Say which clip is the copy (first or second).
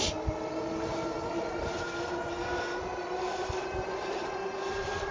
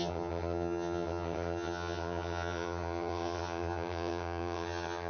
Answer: second